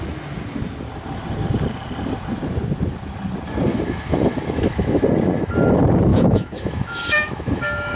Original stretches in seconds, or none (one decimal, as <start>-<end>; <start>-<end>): 0.0-3.7; 5.0-6.1